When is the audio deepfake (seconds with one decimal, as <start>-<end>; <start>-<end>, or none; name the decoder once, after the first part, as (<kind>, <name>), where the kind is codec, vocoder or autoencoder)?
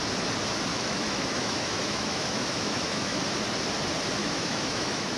0.7-3.2 (autoencoder, DAC-VAE); 4.2-5.2